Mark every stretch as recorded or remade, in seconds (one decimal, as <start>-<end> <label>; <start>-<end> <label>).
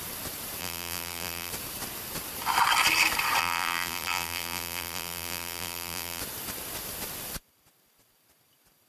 0.0-0.6 recorded; 0.6-1.5 remade; 1.5-3.4 recorded; 3.4-6.2 remade; 6.2-8.9 recorded